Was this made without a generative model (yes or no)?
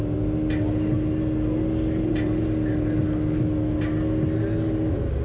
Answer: yes